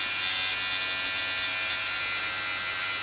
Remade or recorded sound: recorded